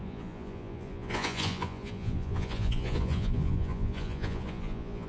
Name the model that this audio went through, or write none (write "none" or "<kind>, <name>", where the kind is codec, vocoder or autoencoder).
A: vocoder, Vocos